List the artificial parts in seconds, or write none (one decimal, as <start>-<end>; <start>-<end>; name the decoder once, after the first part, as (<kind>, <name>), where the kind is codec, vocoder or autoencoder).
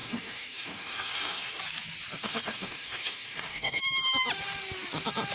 0.0-1.6 (codec, DAC); 2.2-3.8